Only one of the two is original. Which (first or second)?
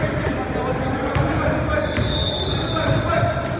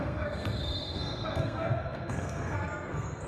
first